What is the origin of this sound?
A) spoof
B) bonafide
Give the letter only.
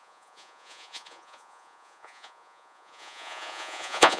A